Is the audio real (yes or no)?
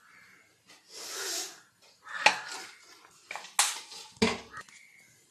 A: yes